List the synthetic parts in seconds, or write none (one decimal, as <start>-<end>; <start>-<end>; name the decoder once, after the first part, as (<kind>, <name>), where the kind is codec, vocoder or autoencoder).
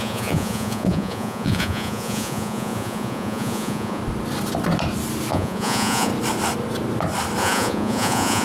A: 0.0-4.0 (vocoder, Vocos); 5.3-6.1; 7.4-8.4